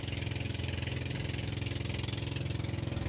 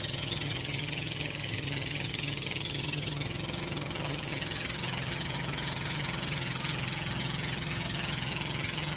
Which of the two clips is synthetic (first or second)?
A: second